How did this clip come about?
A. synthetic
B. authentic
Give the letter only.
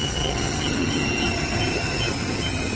A